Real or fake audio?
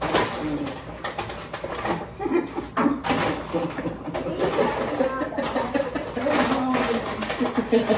real